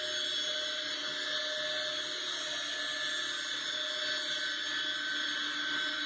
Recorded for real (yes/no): yes